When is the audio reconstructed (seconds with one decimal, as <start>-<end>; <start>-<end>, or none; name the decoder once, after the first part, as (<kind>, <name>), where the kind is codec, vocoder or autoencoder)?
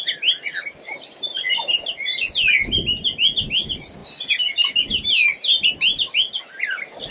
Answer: none